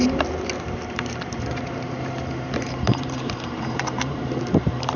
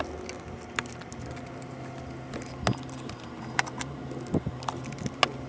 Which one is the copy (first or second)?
first